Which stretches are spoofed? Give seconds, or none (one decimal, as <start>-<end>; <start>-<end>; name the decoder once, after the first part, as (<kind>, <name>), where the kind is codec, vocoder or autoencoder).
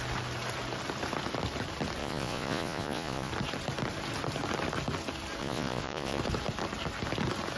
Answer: 2.0-3.3 (vocoder, Vocos); 5.4-6.2